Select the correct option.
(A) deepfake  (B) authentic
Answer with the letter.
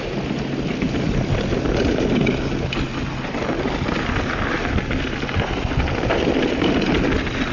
B